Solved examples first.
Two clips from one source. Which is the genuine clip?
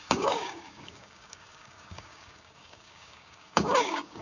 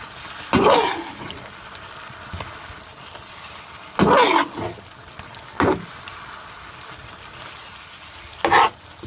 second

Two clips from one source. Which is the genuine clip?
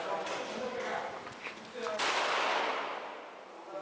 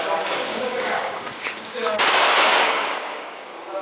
first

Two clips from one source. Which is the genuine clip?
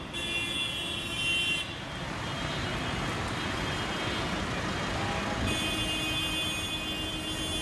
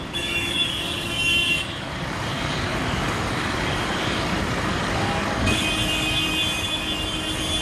first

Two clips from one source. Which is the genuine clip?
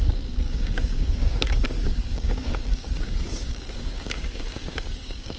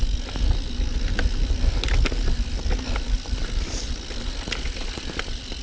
second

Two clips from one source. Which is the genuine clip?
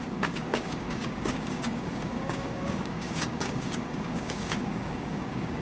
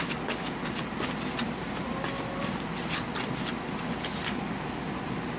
second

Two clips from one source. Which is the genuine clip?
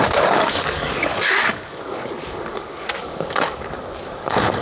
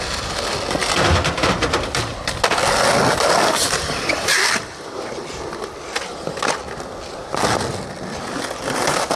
second